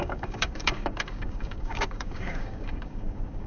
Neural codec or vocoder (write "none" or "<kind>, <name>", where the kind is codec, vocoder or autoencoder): codec, DAC